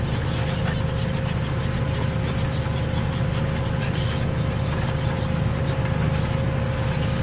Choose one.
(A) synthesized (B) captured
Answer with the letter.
B